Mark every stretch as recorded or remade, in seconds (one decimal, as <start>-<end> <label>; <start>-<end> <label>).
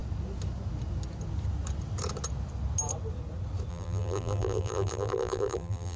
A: 0.0-3.7 recorded; 3.7-6.0 remade